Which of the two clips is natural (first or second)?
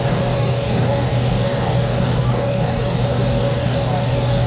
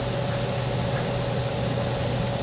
second